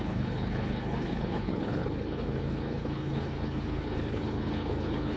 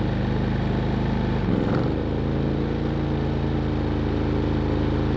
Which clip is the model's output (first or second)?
first